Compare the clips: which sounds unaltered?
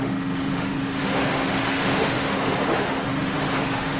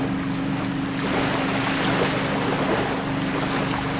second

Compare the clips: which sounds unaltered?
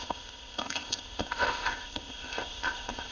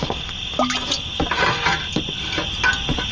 second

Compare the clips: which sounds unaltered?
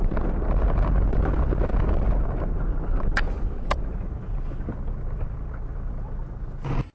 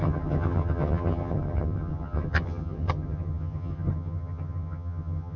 first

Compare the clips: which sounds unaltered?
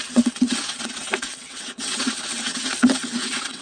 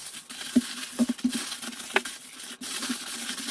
second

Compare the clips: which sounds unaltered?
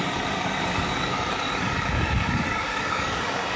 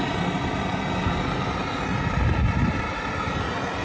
second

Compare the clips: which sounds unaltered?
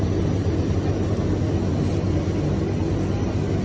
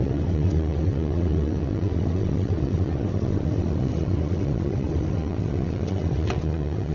first